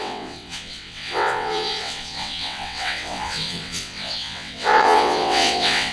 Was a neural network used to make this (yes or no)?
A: yes